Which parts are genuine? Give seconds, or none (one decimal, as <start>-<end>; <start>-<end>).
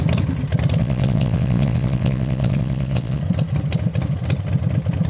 0.0-0.8; 3.2-5.1